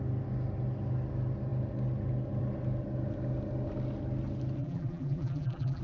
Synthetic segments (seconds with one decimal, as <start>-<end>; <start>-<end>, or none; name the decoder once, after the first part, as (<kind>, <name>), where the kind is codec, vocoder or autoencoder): 4.6-5.8 (vocoder, BigVGAN v2)